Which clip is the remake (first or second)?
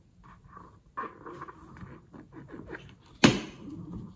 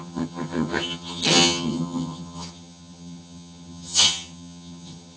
second